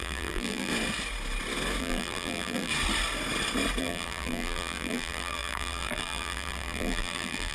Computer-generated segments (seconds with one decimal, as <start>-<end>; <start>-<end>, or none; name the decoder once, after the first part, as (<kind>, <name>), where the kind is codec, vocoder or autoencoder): 0.0-0.7 (vocoder, BigVGAN v2); 1.8-2.7; 3.8-7.5